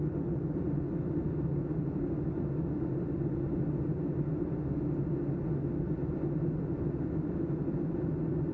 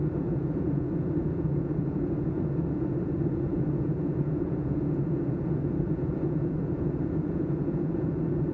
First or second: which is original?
first